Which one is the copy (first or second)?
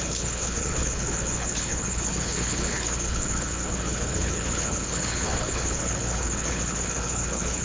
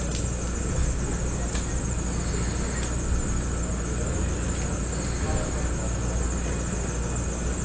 first